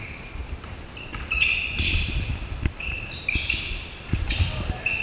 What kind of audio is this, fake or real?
real